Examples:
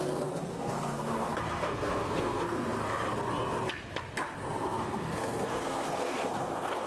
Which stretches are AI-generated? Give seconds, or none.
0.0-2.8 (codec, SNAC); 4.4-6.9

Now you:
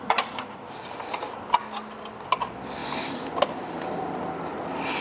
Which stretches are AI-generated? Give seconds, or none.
none

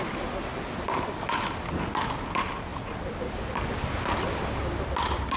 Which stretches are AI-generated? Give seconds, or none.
none

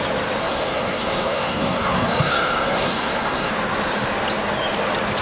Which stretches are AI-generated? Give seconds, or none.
0.4-3.5 (codec, SNAC)

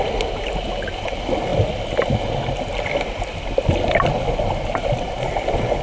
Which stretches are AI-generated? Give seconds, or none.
none

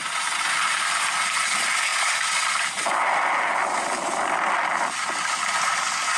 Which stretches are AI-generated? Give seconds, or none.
none

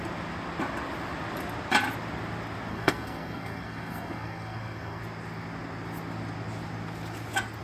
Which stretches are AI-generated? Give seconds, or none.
2.7-5.0 (codec, SNAC)